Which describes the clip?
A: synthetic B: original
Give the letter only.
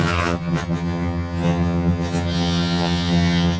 A